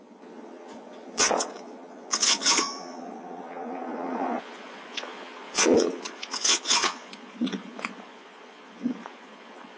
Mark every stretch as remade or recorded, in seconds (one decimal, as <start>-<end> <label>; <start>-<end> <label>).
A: 0.0-9.8 remade